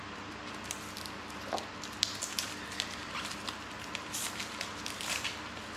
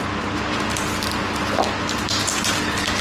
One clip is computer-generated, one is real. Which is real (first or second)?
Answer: second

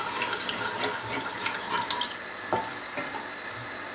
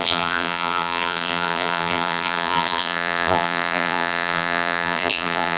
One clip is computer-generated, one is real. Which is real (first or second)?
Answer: first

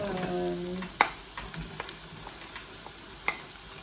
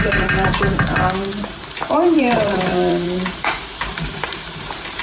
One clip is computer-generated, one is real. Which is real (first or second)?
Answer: first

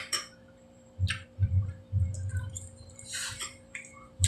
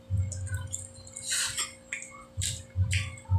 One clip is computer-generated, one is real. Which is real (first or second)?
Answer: second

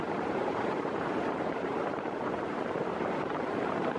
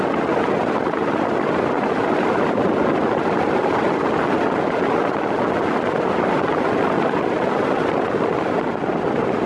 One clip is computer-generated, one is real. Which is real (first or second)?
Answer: second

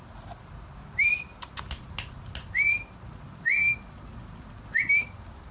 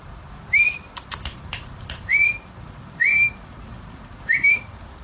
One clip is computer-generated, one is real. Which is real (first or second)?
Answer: first